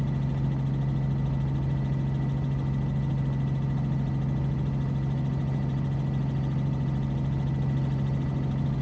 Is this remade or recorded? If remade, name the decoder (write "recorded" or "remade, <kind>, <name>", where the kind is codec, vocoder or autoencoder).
recorded